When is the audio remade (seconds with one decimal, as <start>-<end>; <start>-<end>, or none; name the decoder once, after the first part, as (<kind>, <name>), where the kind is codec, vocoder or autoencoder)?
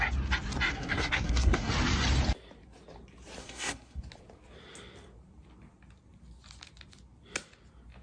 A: 0.7-1.7 (codec, SNAC); 3.4-4.0